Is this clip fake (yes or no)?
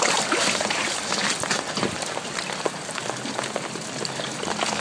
no